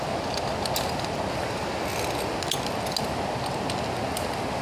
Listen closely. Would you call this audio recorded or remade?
recorded